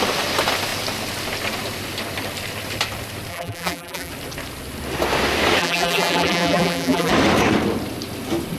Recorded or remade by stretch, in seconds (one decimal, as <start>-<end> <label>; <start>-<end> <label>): 0.0-3.3 recorded; 3.3-4.1 remade; 4.1-5.6 recorded; 5.6-7.1 remade; 7.1-8.6 recorded